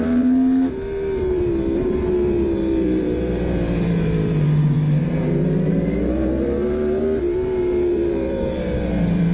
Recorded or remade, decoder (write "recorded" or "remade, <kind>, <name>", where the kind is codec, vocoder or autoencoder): remade, vocoder, BigVGAN v2